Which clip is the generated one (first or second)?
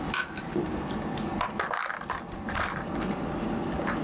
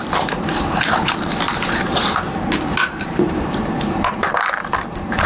second